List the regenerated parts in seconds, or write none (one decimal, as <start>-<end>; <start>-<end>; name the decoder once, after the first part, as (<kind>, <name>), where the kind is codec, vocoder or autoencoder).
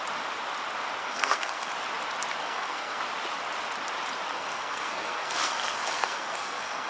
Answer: 1.0-1.7 (codec, SNAC); 2.4-3.0; 4.3-6.9